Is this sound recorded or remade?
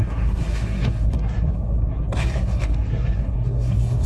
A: remade